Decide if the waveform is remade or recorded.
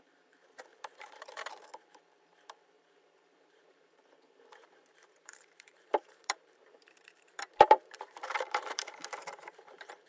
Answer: remade